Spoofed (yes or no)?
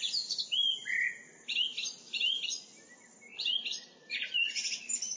no